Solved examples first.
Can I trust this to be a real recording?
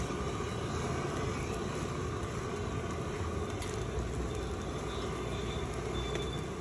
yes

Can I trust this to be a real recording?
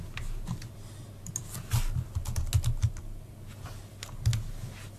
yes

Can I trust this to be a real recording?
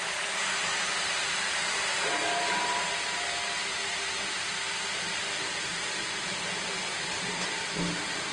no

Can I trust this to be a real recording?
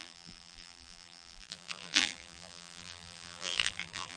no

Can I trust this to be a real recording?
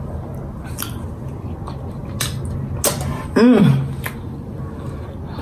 yes